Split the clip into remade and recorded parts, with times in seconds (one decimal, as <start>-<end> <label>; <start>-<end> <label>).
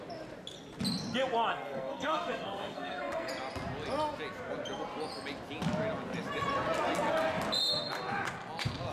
0.0-1.5 recorded; 1.5-3.3 remade; 3.3-8.9 recorded